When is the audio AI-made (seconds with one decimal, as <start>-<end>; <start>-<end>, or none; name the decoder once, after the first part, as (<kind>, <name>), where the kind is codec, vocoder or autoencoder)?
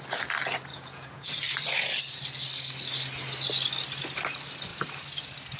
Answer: 0.7-1.3 (vocoder, Vocos)